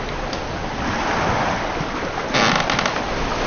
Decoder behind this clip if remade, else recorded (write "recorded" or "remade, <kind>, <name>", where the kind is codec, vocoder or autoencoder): recorded